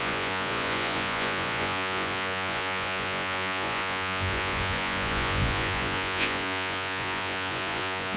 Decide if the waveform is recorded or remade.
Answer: remade